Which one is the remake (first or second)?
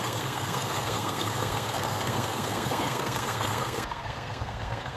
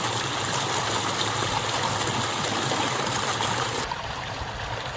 first